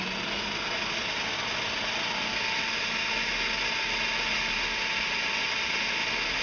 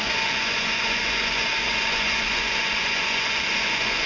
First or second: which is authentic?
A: first